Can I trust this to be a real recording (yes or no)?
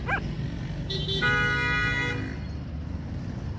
yes